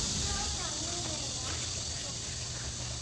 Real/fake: real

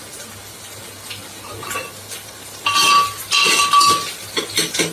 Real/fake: real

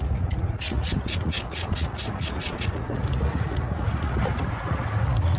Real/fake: fake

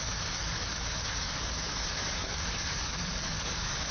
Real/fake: fake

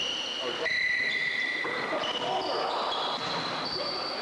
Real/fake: real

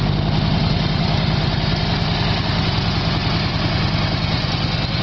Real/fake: real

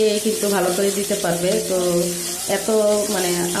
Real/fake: real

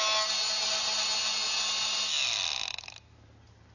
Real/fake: real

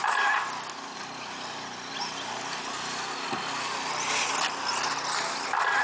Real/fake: real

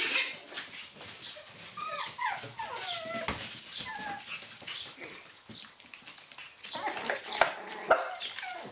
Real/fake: real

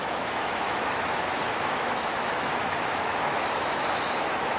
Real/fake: fake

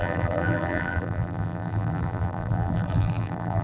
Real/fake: fake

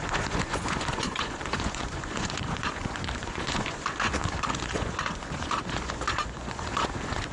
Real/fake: fake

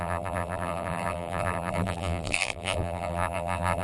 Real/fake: fake